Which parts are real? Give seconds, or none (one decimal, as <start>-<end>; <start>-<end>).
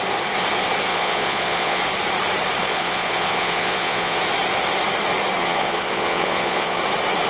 0.0-0.9; 1.8-2.6; 4.2-5.4; 6.8-7.3